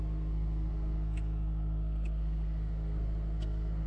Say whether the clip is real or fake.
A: fake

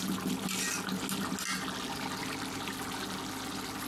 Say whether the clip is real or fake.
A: real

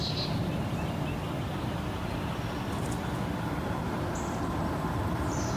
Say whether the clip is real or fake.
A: real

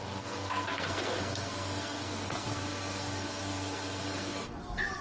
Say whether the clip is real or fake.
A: fake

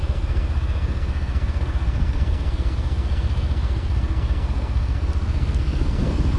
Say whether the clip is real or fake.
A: fake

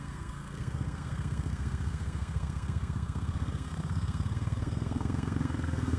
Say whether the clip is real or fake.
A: fake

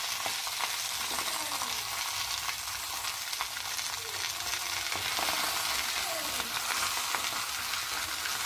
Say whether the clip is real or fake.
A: real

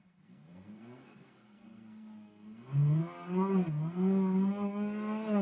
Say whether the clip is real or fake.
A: fake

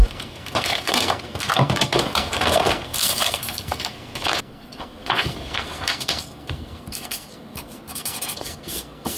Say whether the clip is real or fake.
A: fake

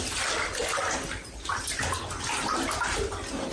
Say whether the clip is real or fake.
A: real